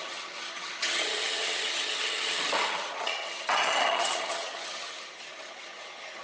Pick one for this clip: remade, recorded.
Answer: remade